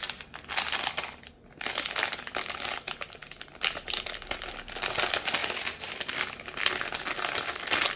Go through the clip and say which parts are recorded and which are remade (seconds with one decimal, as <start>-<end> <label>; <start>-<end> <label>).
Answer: 0.0-8.0 recorded